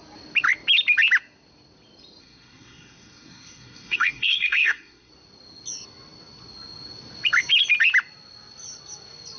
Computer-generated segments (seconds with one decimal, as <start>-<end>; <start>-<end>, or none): 2.2-5.1

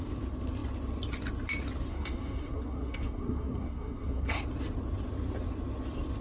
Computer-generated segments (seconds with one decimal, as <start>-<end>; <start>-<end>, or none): 1.9-4.4

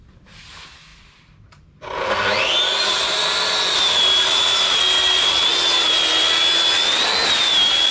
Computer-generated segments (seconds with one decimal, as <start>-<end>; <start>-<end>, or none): none

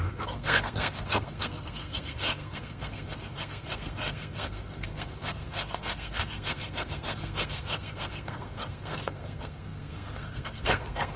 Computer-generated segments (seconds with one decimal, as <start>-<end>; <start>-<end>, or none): 0.0-11.2